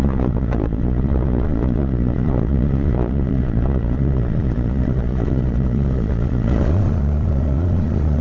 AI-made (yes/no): yes